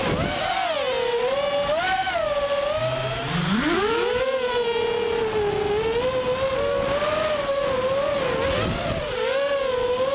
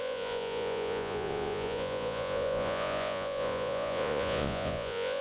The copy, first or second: second